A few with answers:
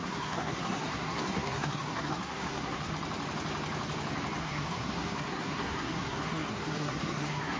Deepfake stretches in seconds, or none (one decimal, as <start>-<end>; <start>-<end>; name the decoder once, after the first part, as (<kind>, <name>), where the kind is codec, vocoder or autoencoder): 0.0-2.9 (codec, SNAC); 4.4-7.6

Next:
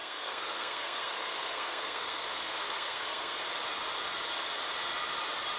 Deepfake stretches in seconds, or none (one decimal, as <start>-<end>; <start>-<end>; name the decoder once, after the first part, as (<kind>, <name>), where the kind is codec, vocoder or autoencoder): 0.0-3.4 (codec, SNAC)

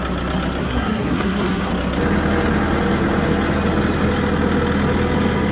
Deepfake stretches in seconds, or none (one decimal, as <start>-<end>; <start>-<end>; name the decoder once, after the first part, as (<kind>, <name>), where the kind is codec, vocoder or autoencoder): 0.6-1.7 (codec, SNAC)